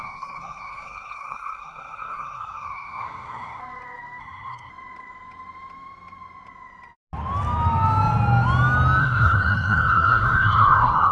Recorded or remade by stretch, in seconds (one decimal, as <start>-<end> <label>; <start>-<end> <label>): 0.0-3.6 remade; 3.6-4.2 recorded; 4.2-4.7 remade; 4.7-9.0 recorded; 9.0-11.1 remade